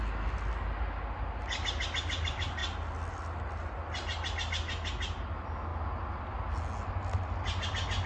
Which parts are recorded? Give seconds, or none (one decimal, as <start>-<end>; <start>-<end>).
0.0-8.1